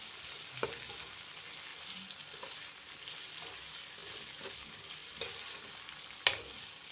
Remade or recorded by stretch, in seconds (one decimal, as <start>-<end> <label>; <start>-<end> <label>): 0.0-1.7 recorded; 1.7-3.3 remade; 3.3-4.0 recorded; 4.0-4.6 remade; 4.6-5.0 recorded; 5.0-5.7 remade; 5.7-6.9 recorded